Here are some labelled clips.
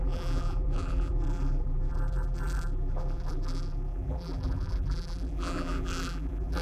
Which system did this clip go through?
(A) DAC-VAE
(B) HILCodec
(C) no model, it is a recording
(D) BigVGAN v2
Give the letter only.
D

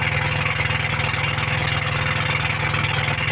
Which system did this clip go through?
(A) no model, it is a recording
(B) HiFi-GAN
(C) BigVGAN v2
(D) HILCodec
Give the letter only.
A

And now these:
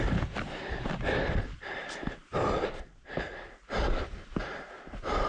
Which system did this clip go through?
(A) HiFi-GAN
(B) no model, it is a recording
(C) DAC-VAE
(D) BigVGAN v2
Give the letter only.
D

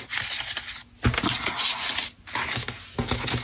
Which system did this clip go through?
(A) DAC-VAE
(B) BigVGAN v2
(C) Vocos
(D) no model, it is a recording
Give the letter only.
D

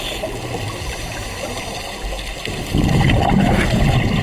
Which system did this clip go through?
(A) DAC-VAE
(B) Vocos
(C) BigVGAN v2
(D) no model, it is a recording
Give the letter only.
D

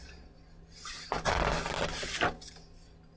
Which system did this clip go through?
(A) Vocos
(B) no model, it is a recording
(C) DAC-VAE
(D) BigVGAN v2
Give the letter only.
B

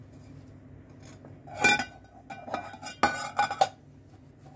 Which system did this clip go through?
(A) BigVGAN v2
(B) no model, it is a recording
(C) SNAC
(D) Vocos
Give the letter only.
B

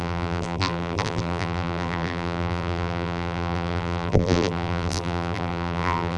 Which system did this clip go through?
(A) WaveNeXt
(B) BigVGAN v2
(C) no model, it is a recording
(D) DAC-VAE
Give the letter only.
B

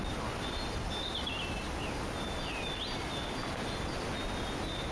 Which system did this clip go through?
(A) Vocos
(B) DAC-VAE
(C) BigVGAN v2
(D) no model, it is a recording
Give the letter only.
D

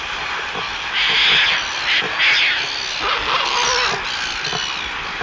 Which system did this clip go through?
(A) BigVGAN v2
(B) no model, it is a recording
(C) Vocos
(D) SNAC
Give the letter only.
B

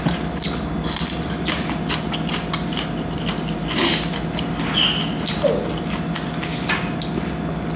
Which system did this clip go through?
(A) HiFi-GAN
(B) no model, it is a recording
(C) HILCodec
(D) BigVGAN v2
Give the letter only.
B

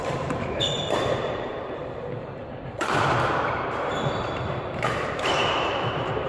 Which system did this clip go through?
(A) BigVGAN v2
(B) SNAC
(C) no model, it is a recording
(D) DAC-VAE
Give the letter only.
A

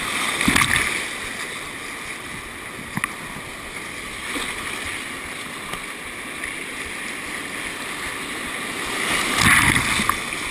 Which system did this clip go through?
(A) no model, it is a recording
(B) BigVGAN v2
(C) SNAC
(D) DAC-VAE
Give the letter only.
A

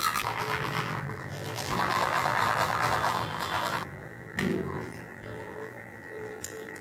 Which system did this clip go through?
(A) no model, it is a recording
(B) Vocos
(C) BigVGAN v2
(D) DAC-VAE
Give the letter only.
C